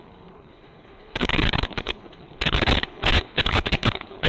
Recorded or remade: remade